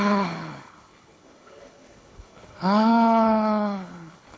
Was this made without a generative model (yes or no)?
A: no